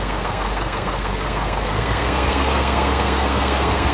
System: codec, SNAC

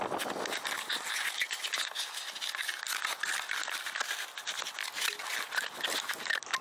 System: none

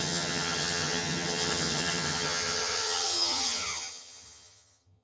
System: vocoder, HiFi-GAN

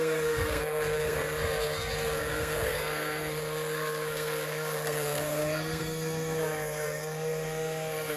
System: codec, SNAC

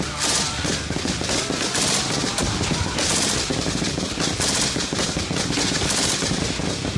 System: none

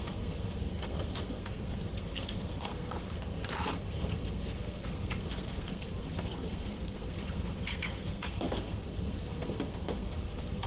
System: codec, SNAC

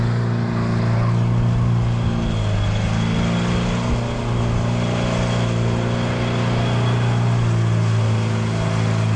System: none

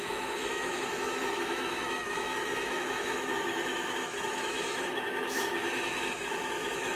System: autoencoder, DAC-VAE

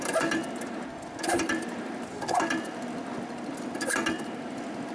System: none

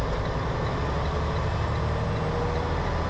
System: none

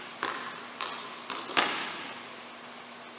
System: none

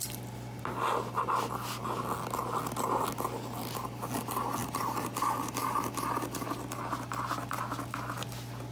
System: none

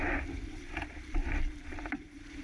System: vocoder, BigVGAN v2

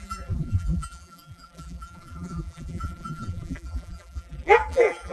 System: vocoder, BigVGAN v2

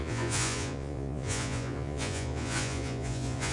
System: vocoder, Vocos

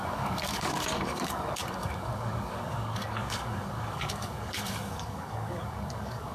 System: codec, DAC